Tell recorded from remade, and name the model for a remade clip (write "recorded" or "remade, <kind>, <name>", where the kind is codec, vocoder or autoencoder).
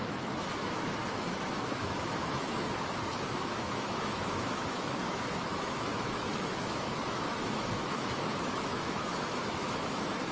remade, autoencoder, DAC-VAE